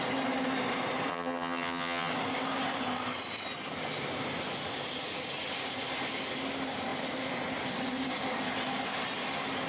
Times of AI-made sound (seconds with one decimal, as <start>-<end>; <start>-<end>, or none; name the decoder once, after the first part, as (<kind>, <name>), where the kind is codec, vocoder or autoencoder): 1.1-2.1 (vocoder, HiFi-GAN)